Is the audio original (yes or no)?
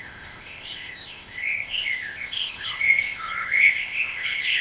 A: no